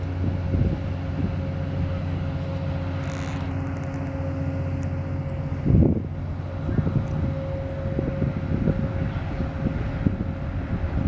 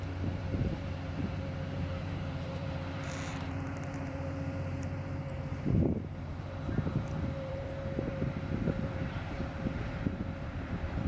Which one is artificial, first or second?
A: second